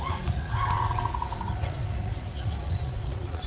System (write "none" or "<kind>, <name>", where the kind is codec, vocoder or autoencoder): vocoder, Vocos